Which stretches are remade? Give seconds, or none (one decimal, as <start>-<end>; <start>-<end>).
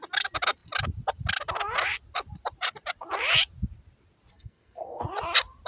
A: 4.3-5.0